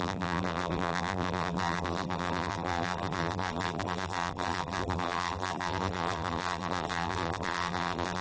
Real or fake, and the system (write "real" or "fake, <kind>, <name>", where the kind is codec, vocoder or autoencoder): fake, vocoder, BigVGAN v2